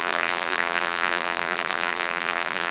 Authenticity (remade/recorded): remade